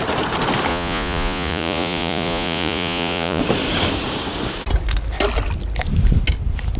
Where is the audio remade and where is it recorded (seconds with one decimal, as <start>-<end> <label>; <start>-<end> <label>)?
0.0-0.7 recorded; 0.7-3.4 remade; 3.4-6.8 recorded